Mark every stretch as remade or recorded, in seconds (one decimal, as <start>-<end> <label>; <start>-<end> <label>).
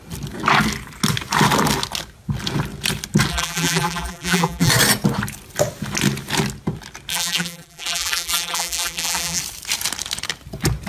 0.0-3.3 recorded; 3.3-4.7 remade; 4.7-7.1 recorded; 7.1-9.4 remade; 9.4-10.9 recorded